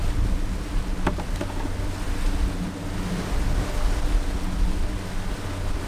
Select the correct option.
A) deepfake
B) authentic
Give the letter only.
B